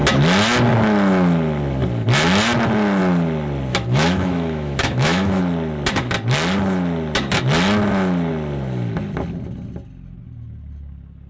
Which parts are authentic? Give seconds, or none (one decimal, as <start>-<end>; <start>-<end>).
0.0-3.7; 5.4-11.3